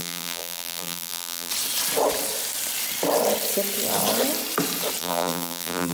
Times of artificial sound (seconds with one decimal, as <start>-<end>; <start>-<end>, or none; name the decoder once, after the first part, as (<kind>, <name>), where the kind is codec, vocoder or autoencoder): 0.0-1.5 (vocoder, BigVGAN v2); 5.0-5.9